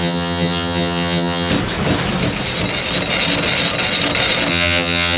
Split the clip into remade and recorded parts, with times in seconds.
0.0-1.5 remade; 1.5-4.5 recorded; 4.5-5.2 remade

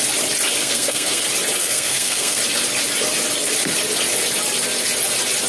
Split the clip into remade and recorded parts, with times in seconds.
0.0-0.6 recorded; 0.6-1.2 remade; 1.2-1.6 recorded; 1.6-2.4 remade; 2.4-5.5 recorded

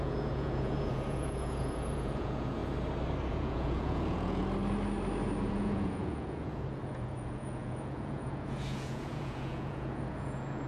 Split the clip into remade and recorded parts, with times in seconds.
0.0-2.6 remade; 2.6-3.3 recorded; 3.3-4.4 remade; 4.4-5.5 recorded; 5.5-10.7 remade

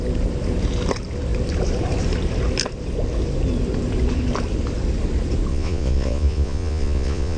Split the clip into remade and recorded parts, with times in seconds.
0.0-5.5 recorded; 5.5-7.4 remade